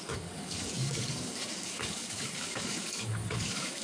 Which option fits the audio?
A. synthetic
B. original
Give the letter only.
A